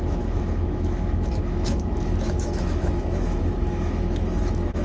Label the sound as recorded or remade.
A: remade